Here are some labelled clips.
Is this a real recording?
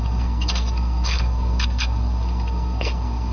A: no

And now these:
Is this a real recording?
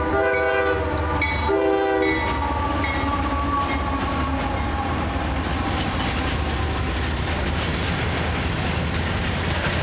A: yes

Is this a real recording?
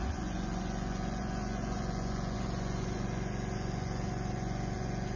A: no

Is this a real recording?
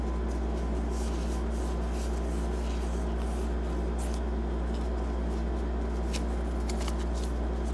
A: yes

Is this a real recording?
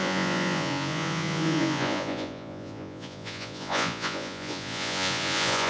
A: no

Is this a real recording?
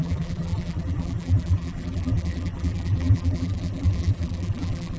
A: no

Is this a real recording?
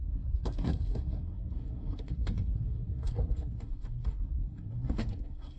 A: no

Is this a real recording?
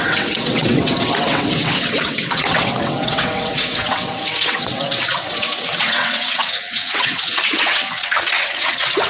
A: no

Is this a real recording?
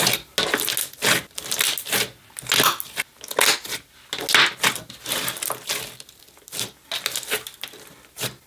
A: yes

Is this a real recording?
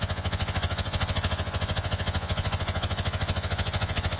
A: no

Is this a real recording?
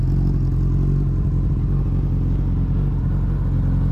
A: yes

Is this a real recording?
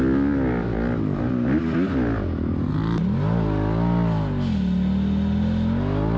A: yes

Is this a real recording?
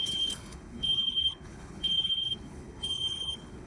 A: no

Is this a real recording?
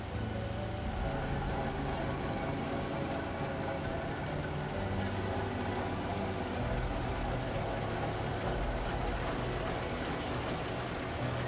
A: yes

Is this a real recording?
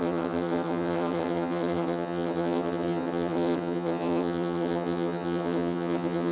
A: no